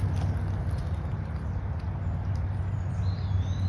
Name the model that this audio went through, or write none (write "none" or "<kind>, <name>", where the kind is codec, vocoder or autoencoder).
none